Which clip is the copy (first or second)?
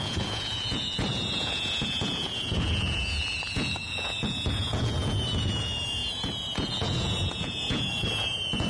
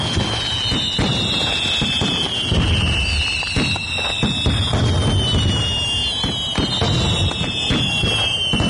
first